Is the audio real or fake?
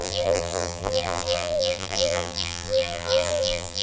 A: fake